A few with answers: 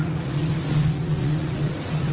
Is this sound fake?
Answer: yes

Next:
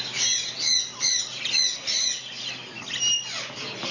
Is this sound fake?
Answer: no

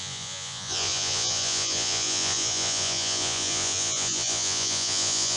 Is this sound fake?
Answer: yes